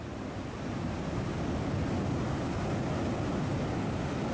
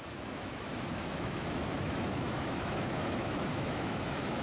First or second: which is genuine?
first